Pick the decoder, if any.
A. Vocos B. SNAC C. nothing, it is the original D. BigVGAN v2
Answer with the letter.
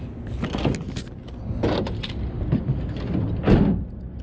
C